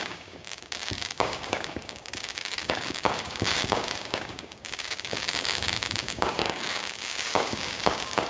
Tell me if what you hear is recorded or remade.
remade